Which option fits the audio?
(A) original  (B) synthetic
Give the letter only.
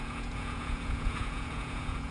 B